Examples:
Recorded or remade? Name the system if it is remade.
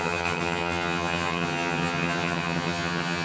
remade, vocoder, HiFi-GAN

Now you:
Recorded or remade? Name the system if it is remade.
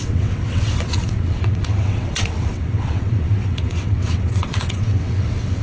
remade, vocoder, WaveNeXt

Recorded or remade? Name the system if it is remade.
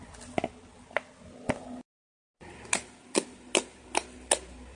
recorded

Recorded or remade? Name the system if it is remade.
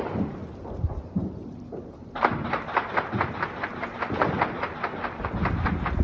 remade, vocoder, BigVGAN v2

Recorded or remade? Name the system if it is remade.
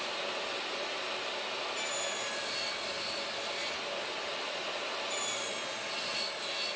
recorded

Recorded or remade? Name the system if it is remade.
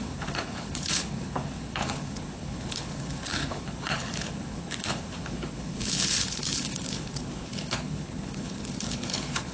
remade, codec, HILCodec